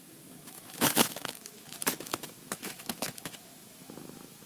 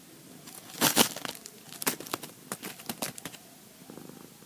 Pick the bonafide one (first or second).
second